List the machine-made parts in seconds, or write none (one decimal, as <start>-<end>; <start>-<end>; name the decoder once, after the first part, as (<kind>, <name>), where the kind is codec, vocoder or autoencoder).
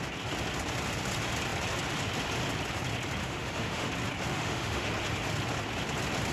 3.2-3.9 (autoencoder, DAC-VAE); 4.3-4.9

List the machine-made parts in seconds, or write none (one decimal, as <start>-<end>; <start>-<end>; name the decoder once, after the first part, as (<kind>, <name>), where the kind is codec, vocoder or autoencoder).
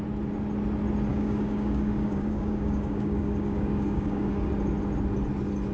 1.1-4.5 (codec, DAC)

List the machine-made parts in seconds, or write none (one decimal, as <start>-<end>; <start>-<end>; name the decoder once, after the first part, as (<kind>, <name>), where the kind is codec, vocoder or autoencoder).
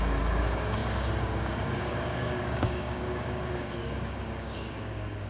0.0-5.3 (codec, DAC)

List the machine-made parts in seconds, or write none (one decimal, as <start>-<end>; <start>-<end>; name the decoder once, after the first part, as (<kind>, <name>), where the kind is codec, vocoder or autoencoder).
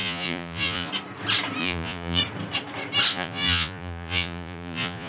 0.0-0.9 (vocoder, Vocos); 1.6-2.2; 3.1-5.1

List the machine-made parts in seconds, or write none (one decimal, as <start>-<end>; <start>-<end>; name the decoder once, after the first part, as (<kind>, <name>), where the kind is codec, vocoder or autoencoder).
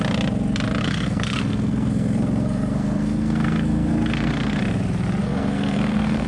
0.8-4.6 (codec, SNAC); 5.2-6.3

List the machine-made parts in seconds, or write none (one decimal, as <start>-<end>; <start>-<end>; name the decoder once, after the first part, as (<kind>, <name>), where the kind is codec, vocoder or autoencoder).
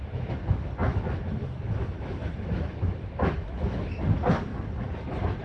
0.0-4.5 (autoencoder, DAC-VAE)